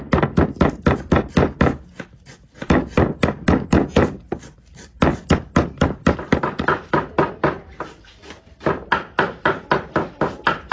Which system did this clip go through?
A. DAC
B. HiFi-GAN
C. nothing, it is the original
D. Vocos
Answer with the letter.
C